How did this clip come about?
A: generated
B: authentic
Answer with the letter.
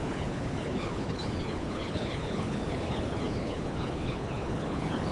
A